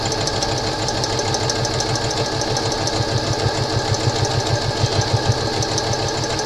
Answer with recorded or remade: recorded